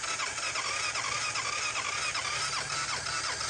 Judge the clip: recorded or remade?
recorded